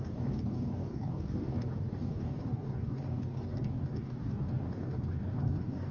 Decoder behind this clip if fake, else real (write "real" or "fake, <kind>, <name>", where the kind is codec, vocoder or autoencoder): fake, codec, DAC